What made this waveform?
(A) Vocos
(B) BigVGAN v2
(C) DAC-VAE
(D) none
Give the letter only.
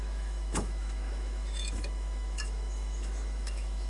C